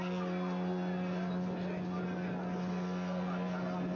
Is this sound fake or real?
real